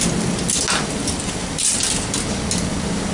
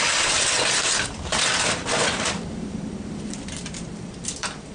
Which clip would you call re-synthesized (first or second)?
second